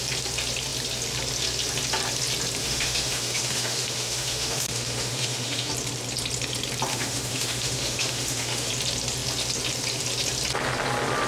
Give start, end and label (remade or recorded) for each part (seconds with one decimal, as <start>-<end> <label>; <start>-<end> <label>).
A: 0.0-2.6 recorded; 2.6-5.7 remade; 5.7-6.9 recorded; 6.9-8.7 remade; 8.7-11.3 recorded